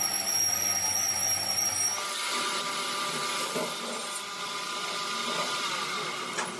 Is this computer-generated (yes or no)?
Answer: no